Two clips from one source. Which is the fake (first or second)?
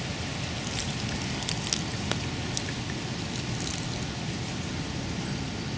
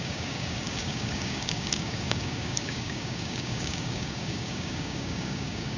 second